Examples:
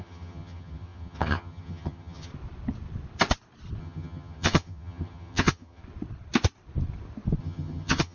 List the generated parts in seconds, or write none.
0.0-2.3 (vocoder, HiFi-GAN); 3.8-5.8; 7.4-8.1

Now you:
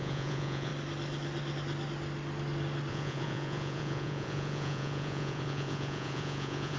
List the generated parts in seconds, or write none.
0.0-0.7 (vocoder, Vocos); 2.9-6.8

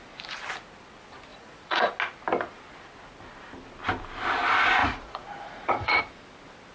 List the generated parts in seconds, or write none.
1.3-1.9 (vocoder, Vocos); 4.8-6.0

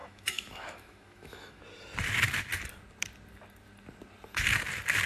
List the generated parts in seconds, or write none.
0.0-1.6 (autoencoder, DAC-VAE)

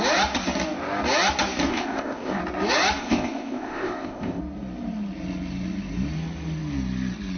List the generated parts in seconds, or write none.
1.7-2.4 (codec, ZipCodec); 3.0-4.4